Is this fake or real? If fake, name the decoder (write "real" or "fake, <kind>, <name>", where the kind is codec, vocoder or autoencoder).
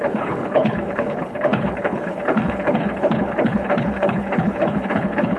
fake, codec, HILCodec